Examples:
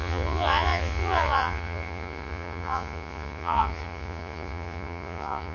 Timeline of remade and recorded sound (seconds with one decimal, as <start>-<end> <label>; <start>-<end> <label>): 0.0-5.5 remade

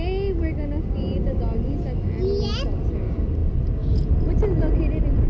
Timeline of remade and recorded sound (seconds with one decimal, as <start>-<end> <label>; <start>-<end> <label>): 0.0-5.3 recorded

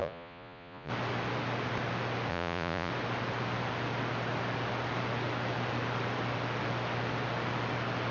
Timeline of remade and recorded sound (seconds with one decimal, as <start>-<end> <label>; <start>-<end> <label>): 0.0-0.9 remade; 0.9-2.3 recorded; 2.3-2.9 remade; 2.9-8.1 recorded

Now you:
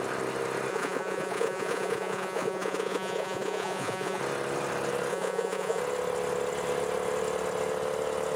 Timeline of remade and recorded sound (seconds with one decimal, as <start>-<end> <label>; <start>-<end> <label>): 0.0-0.7 recorded; 0.7-4.2 remade; 4.2-5.1 recorded; 5.1-5.8 remade; 5.8-8.4 recorded

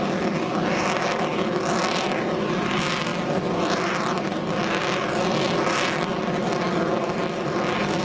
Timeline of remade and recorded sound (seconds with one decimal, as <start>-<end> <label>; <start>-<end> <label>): 0.0-8.0 recorded

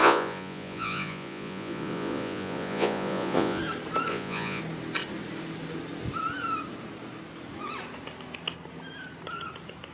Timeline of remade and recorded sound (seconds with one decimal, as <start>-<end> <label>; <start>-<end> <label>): 0.0-3.6 remade; 3.6-4.1 recorded; 4.1-4.6 remade; 4.6-9.9 recorded

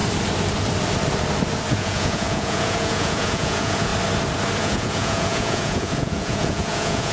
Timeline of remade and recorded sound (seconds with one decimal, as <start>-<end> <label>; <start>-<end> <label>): 0.0-1.7 recorded; 1.7-3.9 remade; 3.9-4.6 recorded; 4.6-7.1 remade

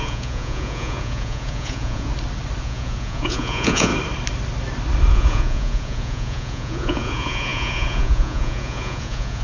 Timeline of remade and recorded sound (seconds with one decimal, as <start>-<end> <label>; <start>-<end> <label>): 0.0-2.1 remade; 2.1-2.6 recorded; 2.6-3.9 remade; 3.9-5.1 recorded; 5.1-9.4 remade